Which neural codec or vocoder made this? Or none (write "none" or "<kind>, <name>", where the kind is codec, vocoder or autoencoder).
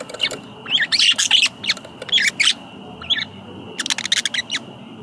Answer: none